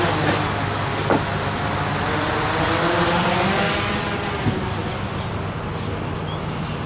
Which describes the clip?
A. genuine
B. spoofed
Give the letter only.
A